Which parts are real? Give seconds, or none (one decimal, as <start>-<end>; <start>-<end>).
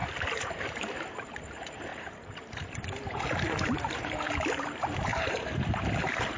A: 5.1-6.0